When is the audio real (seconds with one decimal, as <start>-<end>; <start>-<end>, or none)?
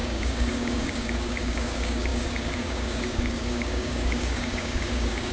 none